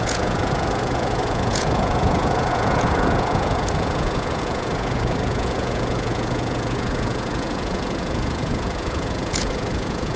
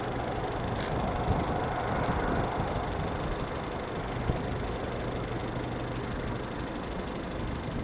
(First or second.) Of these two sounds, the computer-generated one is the first